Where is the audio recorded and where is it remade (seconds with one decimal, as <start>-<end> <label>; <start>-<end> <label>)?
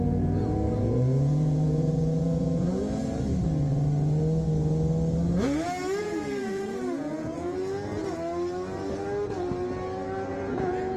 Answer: 0.0-3.0 remade; 3.0-6.0 recorded; 6.0-7.9 remade; 7.9-10.3 recorded; 10.3-11.0 remade